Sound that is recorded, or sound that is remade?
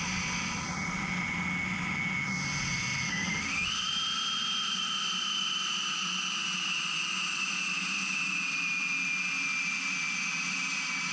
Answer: recorded